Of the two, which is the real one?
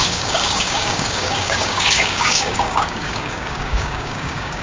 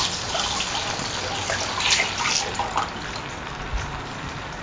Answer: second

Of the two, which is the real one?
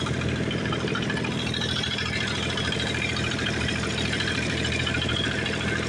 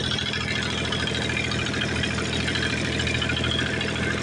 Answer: second